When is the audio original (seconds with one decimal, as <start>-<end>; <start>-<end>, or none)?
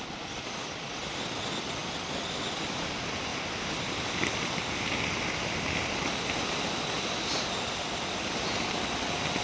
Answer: 0.0-9.4